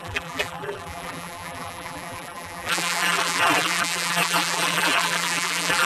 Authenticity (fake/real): fake